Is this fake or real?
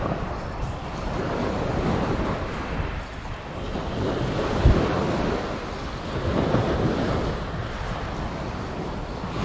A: real